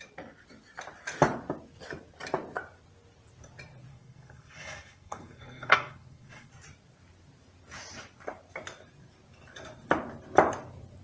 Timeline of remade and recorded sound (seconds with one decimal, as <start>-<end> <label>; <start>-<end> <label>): 0.0-3.9 recorded; 3.9-6.5 remade; 6.5-11.0 recorded